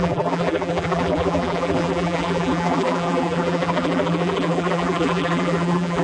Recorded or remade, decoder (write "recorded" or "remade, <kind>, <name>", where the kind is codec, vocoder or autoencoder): remade, vocoder, BigVGAN v2